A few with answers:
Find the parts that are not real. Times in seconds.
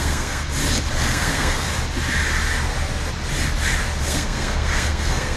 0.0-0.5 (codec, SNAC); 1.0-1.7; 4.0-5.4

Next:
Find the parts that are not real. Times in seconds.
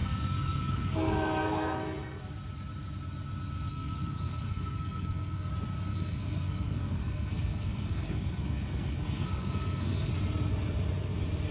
0.0-2.2 (codec, SNAC); 3.7-5.5; 5.9-10.1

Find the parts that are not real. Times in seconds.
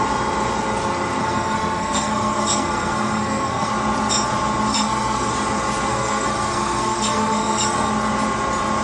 1.2-3.7 (codec, SNAC); 4.7-5.3; 5.9-7.9